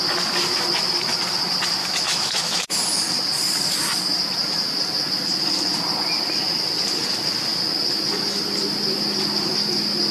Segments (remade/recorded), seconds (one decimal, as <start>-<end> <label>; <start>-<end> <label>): 0.0-1.8 recorded; 1.8-2.8 remade; 2.8-10.1 recorded